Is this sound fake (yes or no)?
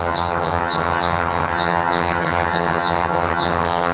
yes